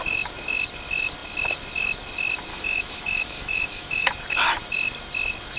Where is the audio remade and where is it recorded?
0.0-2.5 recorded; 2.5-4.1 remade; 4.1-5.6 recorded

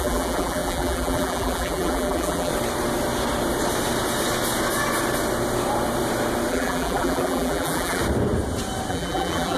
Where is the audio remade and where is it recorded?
0.0-2.5 remade; 2.5-6.5 recorded; 6.5-8.0 remade; 8.0-8.9 recorded; 8.9-9.6 remade

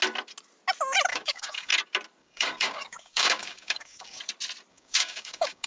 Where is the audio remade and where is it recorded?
0.0-1.1 recorded; 1.1-1.7 remade; 1.7-2.2 recorded; 2.2-4.2 remade; 4.2-4.7 recorded; 4.7-5.7 remade

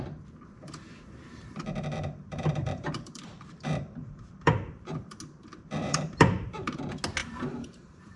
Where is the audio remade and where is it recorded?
0.0-0.6 recorded; 0.6-5.2 remade; 5.2-5.8 recorded; 5.8-6.8 remade; 6.8-7.2 recorded; 7.2-8.2 remade